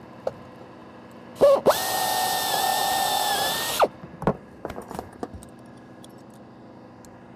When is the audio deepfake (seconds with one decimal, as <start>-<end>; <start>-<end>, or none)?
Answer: 2.7-6.2